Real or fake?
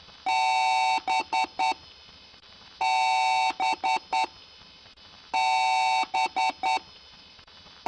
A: real